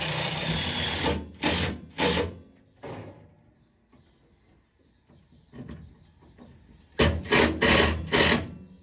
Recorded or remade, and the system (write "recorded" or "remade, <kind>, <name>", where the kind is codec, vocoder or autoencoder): recorded